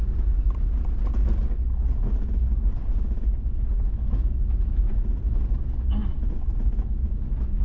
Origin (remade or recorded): recorded